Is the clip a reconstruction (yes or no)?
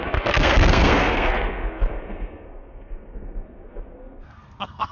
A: yes